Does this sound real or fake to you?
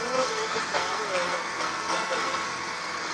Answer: fake